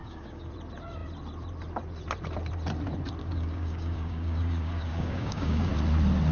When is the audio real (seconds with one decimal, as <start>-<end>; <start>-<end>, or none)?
0.5-3.2; 5.7-6.3

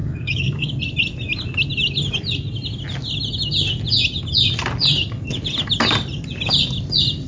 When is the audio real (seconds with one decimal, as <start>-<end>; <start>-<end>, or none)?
0.8-7.3

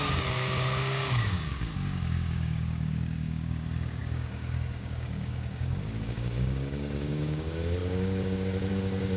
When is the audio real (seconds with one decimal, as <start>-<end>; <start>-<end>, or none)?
none

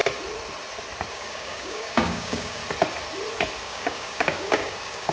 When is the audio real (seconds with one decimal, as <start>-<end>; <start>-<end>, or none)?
0.0-1.1; 2.6-3.6

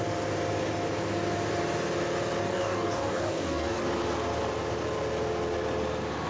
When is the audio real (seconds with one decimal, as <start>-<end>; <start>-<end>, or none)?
0.0-2.4; 3.8-6.3

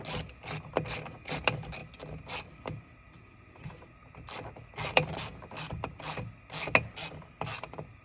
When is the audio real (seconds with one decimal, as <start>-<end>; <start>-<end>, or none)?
0.0-8.0